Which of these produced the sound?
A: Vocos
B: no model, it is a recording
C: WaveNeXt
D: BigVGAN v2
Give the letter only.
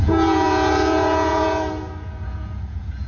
A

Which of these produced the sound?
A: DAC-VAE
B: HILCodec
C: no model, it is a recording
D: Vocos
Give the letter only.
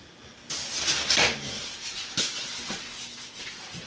C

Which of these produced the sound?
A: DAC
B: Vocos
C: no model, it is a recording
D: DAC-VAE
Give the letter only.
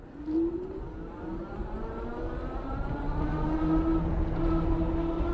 C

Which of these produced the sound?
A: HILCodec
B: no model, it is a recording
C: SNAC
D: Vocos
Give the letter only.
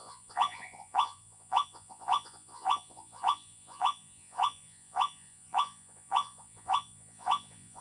D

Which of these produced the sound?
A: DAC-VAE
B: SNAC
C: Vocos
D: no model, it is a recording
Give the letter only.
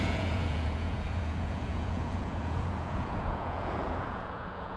C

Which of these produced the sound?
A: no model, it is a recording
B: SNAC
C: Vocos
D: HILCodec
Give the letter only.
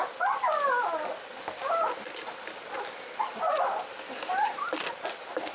A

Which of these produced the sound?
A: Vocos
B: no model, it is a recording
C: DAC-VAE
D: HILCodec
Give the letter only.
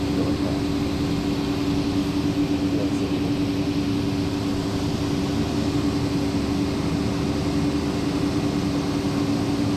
B